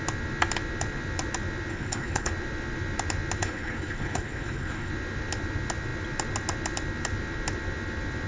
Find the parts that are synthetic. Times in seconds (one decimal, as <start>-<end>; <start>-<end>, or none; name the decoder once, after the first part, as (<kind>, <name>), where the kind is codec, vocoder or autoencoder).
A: 1.7-2.3 (codec, HILCodec); 3.4-4.9